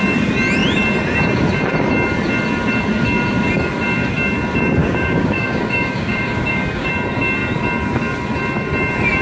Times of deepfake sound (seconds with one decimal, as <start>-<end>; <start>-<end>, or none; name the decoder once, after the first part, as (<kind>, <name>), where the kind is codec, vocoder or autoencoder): 4.8-6.9 (codec, DAC)